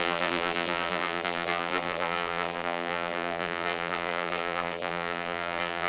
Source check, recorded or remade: remade